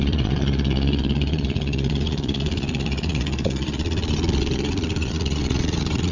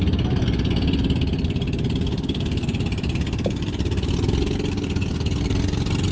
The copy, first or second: first